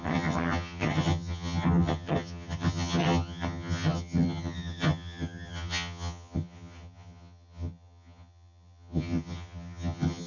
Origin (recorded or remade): remade